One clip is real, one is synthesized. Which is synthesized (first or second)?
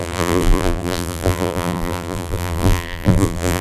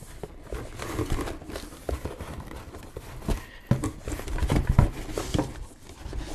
first